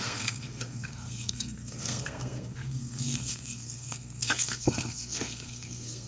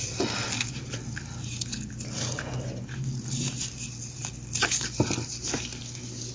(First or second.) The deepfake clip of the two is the first